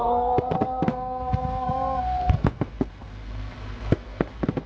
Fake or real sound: fake